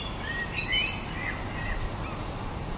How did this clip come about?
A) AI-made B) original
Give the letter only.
B